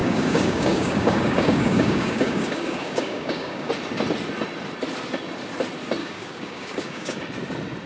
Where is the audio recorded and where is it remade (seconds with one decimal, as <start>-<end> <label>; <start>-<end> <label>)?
0.0-3.7 remade; 3.7-6.0 recorded; 6.0-7.2 remade; 7.2-7.9 recorded